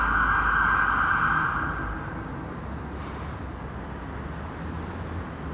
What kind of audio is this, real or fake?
real